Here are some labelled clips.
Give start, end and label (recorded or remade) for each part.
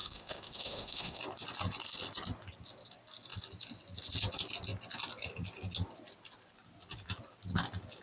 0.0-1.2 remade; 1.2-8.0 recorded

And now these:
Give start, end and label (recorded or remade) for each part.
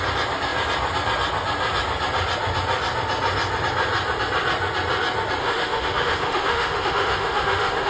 0.0-5.4 recorded; 5.4-7.9 remade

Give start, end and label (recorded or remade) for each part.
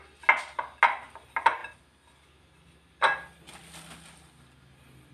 0.0-5.1 recorded